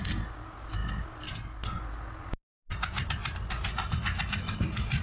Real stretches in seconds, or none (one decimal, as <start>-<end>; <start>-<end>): 0.0-5.0